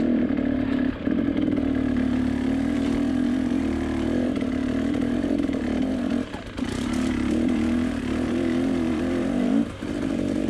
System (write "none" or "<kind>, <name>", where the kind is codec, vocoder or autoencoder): vocoder, BigVGAN v2